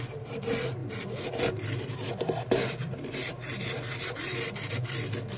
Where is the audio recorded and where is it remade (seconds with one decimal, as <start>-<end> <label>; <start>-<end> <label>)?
0.0-5.4 recorded